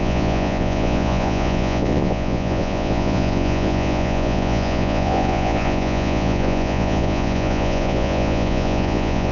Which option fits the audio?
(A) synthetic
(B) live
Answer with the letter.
A